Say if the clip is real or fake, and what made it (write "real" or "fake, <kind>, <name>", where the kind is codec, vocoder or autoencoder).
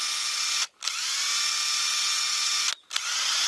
real